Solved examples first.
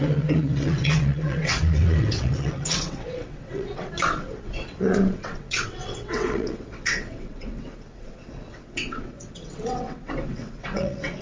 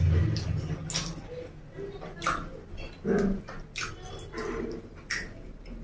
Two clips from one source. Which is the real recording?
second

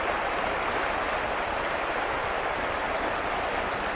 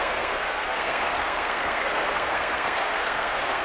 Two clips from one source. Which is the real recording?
first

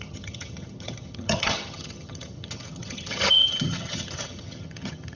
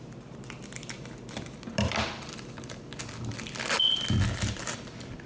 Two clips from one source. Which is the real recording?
second